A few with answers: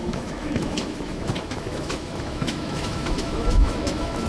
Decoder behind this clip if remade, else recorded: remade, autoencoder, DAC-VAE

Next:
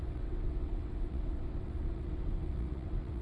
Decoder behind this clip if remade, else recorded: remade, vocoder, WaveNeXt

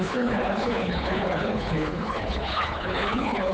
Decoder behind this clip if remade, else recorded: remade, codec, HILCodec